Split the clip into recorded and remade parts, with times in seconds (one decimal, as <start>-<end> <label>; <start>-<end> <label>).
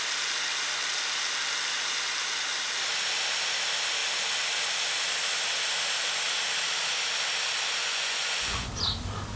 0.0-7.8 recorded; 7.8-8.7 remade; 8.7-9.4 recorded